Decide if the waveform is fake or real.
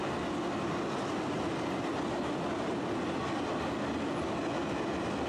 real